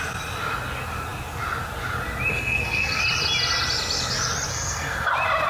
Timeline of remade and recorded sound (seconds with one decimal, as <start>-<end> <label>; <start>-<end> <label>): 0.0-2.3 recorded; 2.3-3.0 remade; 3.0-4.5 recorded; 4.5-5.1 remade; 5.1-5.5 recorded